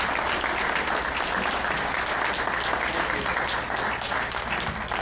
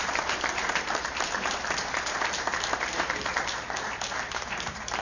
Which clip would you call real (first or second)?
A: first